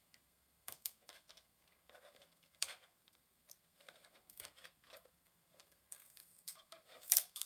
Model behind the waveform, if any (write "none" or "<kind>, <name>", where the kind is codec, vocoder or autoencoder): codec, SNAC